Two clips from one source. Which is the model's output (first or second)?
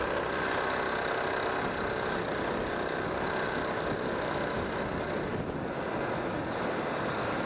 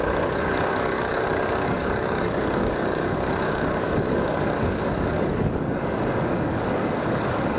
second